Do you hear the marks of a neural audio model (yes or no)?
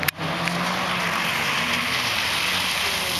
no